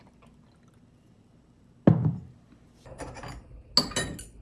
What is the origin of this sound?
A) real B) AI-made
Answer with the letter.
A